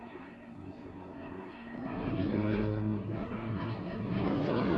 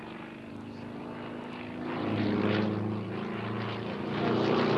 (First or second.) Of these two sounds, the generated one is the first